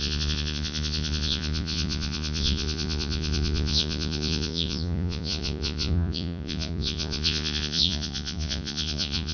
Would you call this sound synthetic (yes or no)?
yes